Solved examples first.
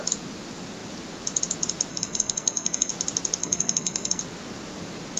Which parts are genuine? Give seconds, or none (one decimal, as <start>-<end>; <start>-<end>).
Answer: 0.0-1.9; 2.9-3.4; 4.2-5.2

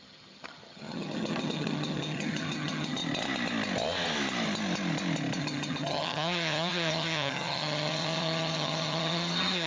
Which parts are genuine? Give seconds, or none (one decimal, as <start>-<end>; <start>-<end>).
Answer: 3.0-5.4

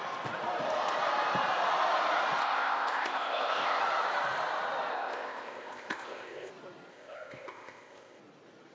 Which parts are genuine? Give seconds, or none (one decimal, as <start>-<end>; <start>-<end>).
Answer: 0.0-2.4; 3.8-4.9; 6.5-6.9; 8.2-8.7

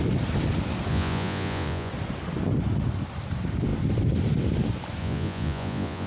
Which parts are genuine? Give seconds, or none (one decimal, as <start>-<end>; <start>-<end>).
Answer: 0.0-0.9; 1.9-5.0

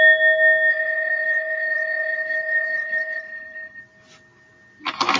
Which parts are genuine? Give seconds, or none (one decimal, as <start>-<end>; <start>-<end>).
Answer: 0.0-0.7; 3.8-5.2

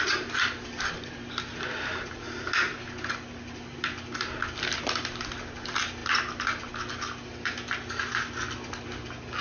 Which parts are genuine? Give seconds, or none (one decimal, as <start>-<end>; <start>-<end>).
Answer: 0.0-9.4

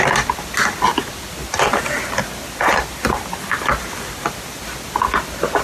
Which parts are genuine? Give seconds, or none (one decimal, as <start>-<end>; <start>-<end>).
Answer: 0.0-5.6